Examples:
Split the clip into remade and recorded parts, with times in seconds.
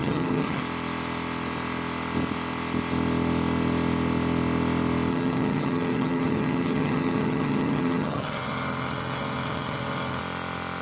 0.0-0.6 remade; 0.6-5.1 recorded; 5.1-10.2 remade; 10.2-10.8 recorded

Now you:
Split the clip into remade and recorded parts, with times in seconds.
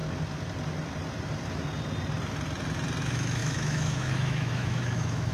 0.0-3.0 recorded; 3.0-5.3 remade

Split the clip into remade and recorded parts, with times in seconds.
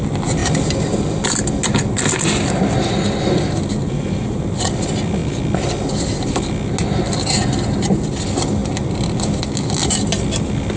0.0-3.8 recorded; 3.8-4.4 remade; 4.4-10.8 recorded